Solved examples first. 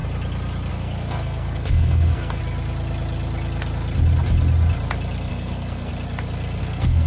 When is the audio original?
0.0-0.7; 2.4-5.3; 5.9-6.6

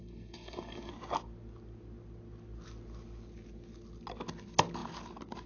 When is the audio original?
0.9-5.5

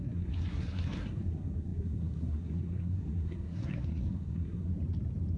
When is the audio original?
4.7-5.4

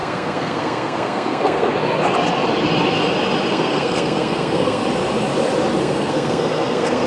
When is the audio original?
1.7-3.5; 4.8-5.8

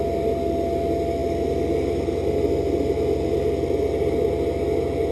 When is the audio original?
0.0-5.1

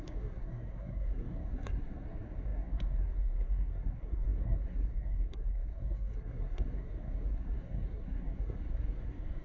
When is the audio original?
none

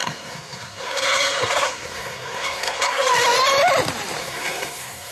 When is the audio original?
3.1-4.2

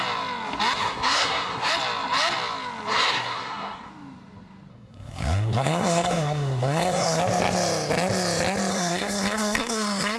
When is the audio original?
0.0-0.8; 1.7-2.9; 3.9-4.7; 7.2-8.7